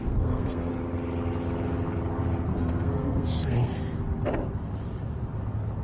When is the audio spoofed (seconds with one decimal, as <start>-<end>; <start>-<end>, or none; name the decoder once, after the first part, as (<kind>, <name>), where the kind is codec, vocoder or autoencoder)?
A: 0.0-0.7 (codec, SNAC); 2.5-4.0